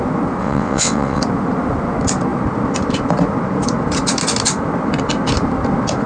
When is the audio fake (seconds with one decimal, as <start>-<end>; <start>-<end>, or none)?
0.4-1.2